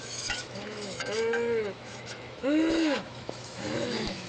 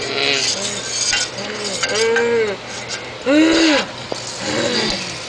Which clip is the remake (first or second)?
first